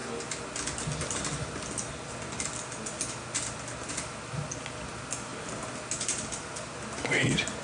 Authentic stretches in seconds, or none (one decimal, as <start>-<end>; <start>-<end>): 0.0-7.6